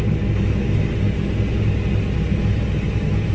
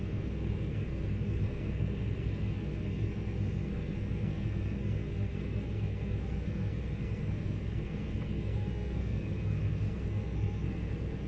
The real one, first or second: first